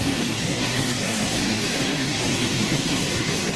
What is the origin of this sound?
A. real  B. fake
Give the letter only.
B